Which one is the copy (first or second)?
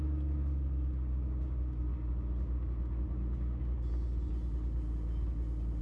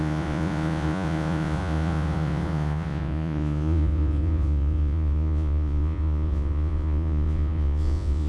second